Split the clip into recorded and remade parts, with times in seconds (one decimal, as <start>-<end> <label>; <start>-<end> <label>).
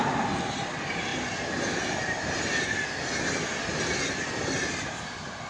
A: 0.0-5.5 recorded